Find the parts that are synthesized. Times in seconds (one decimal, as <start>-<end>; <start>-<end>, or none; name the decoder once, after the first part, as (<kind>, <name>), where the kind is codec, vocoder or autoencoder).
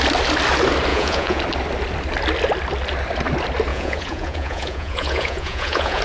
0.9-1.4 (vocoder, Vocos); 3.7-6.0